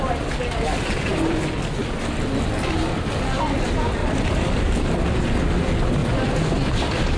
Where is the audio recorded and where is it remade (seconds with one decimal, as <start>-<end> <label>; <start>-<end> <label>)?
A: 0.0-4.0 recorded; 4.0-5.4 remade; 5.4-6.0 recorded; 6.0-7.2 remade